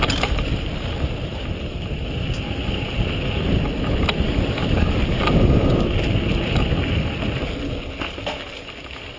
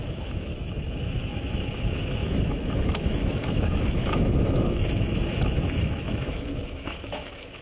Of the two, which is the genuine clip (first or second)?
first